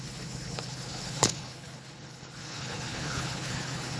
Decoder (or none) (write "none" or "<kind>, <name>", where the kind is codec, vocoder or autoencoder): codec, HILCodec